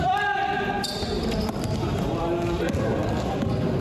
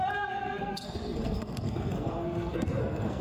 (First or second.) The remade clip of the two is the second